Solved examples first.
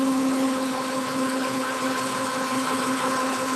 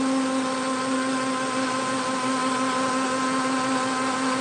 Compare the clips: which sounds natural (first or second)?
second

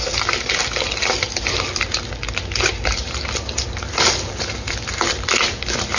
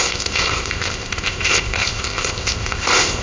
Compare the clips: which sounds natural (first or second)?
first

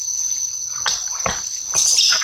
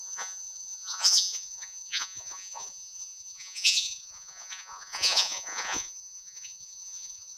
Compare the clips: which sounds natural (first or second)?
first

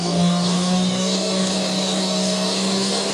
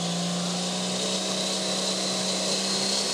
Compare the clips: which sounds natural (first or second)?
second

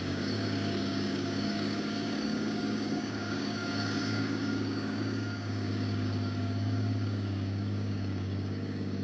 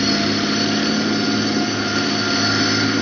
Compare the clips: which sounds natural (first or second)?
second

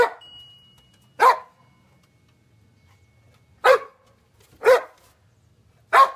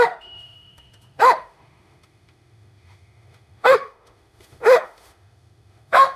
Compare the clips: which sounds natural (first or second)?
first